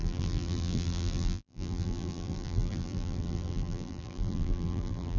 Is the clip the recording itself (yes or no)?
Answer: no